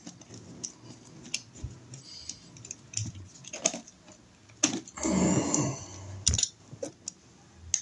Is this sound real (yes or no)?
yes